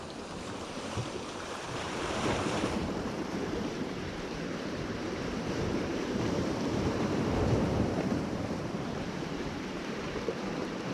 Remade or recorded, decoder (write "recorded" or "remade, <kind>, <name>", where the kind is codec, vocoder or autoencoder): remade, vocoder, BigVGAN v2